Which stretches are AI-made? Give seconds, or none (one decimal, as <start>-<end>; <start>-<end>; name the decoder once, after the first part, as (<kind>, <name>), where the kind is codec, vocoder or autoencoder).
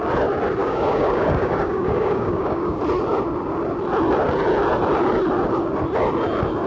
0.6-2.8 (codec, DAC)